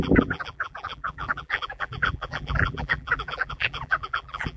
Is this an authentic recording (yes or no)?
no